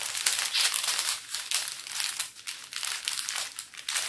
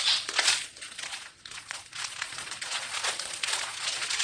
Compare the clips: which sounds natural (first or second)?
first